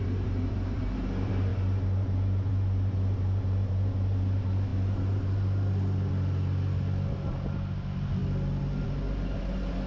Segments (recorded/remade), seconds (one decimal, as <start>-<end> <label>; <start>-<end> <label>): 0.0-9.9 recorded